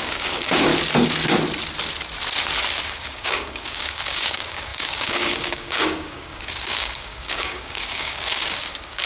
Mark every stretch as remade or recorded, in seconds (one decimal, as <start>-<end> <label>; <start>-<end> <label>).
0.0-0.7 remade; 0.7-2.8 recorded; 2.8-9.1 remade